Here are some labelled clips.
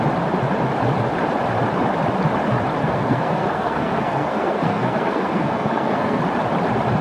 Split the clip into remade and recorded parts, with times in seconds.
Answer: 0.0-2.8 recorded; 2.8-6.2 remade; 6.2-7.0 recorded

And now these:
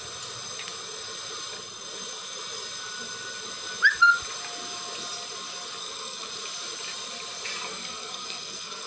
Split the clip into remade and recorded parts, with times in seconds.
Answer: 0.0-5.8 recorded; 5.8-6.3 remade; 6.3-7.7 recorded; 7.7-8.9 remade

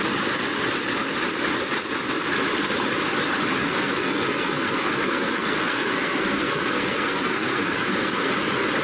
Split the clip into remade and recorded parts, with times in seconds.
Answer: 0.0-3.6 recorded; 3.6-8.3 remade; 8.3-8.8 recorded